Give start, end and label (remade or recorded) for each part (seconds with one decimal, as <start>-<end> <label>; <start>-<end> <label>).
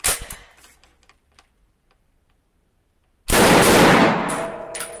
0.0-5.0 recorded